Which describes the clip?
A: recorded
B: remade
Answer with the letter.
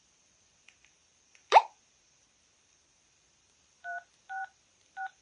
B